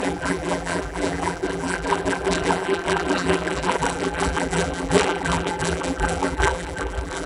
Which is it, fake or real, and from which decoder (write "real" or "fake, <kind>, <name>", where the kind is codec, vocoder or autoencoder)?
fake, vocoder, BigVGAN v2